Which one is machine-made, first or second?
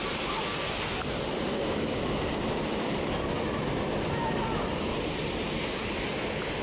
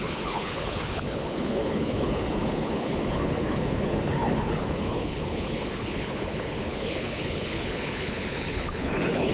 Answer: second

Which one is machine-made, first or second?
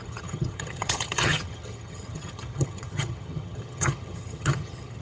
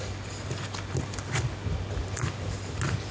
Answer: first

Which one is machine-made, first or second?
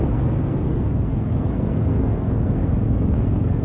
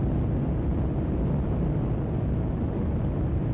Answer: first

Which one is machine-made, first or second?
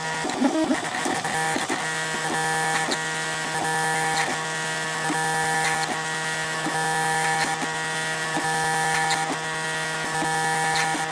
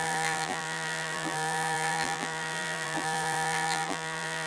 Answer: second